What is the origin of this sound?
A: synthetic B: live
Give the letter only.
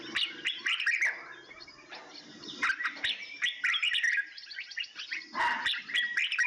B